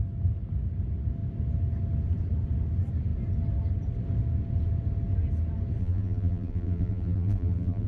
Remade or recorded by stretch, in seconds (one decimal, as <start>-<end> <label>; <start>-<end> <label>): 0.0-5.8 recorded; 5.8-7.9 remade